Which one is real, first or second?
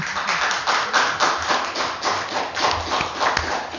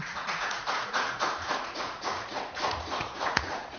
first